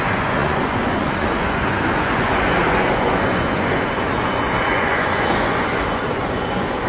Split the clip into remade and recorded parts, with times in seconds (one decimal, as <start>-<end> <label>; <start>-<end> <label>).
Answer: 0.0-6.9 remade